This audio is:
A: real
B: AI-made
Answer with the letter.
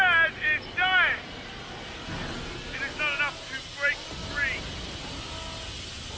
A